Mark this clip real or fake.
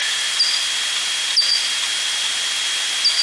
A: real